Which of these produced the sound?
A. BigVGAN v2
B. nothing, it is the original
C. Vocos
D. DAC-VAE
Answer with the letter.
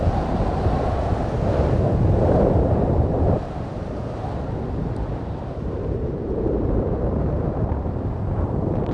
A